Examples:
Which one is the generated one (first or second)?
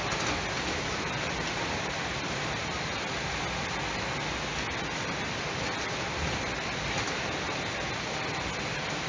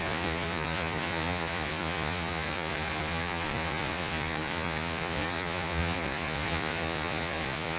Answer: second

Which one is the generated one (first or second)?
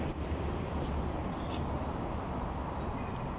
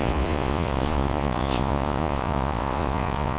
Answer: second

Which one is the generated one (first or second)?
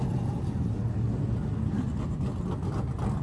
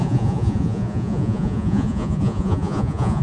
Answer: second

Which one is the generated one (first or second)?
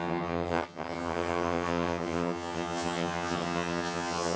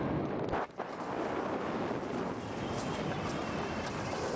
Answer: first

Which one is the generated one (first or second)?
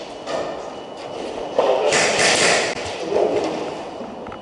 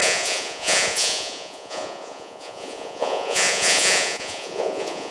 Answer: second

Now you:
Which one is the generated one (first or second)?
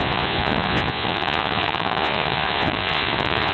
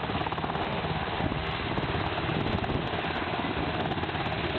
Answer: first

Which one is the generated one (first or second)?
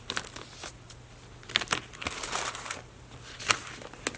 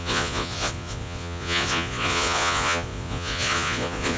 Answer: second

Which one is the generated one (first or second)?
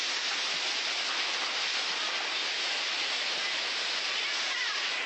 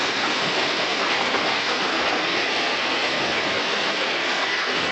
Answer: second